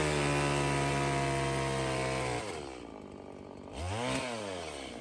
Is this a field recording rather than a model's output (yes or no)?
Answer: yes